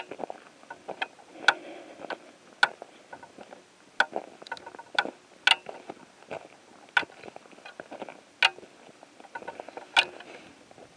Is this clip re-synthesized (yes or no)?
no